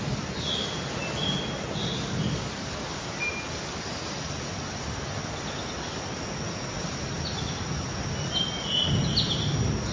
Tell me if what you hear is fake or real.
real